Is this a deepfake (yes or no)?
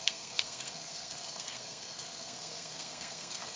yes